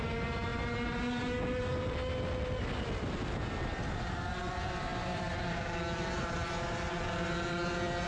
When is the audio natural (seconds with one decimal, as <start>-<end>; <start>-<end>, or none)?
0.0-8.1